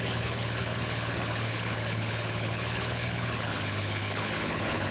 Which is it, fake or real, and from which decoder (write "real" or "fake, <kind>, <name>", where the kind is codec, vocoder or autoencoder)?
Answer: fake, codec, HILCodec